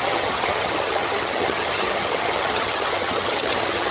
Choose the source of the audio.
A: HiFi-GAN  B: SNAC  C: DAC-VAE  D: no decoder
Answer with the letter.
A